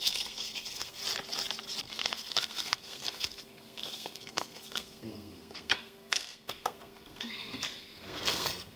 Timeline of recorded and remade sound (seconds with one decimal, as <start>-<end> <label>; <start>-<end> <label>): 0.0-1.0 remade; 1.0-1.8 recorded; 1.8-8.8 remade